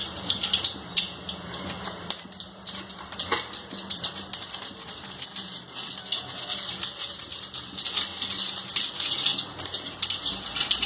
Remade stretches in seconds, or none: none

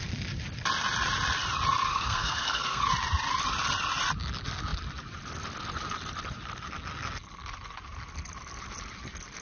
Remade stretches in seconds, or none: 1.9-2.8 (codec, SNAC)

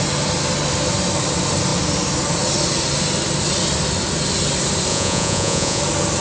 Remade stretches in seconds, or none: 4.9-5.8 (vocoder, Vocos)